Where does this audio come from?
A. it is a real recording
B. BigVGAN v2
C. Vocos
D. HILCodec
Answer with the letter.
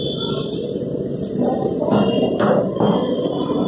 A